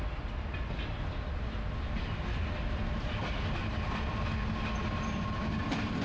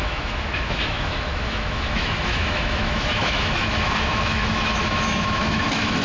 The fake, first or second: second